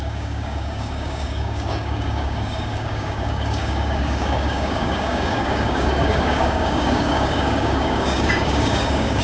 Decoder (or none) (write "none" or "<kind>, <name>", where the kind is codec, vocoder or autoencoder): codec, DAC